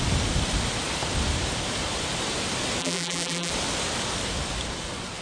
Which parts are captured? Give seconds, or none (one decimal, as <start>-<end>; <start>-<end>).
0.0-2.8; 3.5-5.2